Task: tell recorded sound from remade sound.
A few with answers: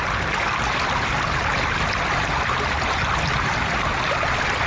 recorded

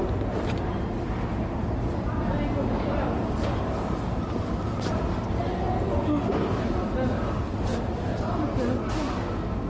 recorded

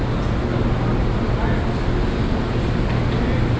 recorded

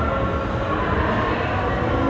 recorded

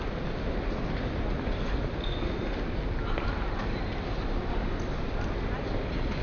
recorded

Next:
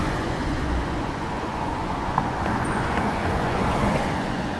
remade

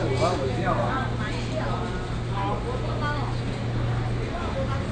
recorded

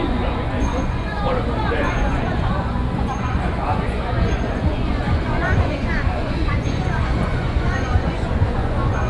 remade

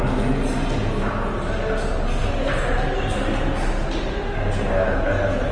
recorded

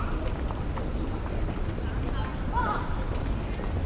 recorded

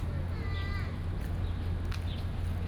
recorded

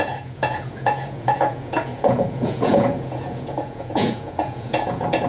remade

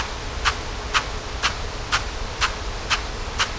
recorded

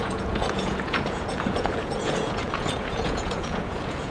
remade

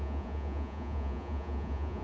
remade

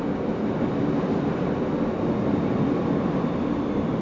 recorded